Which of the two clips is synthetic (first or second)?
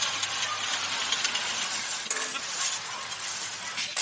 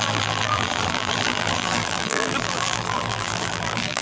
second